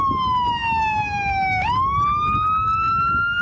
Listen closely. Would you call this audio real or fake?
real